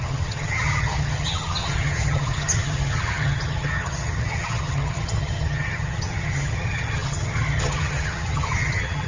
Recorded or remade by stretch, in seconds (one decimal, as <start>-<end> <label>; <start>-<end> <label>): 0.0-9.1 remade